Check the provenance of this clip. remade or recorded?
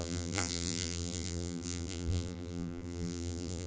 remade